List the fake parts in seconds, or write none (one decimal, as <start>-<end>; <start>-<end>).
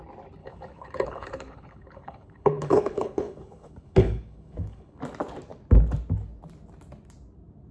0.4-5.0